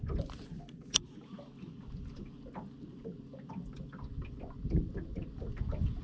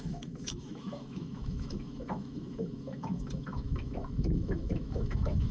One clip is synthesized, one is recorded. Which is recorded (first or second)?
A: first